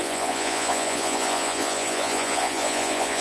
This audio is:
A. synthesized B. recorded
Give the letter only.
A